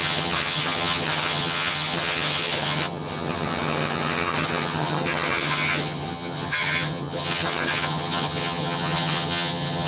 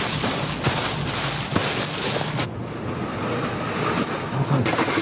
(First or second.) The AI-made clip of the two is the first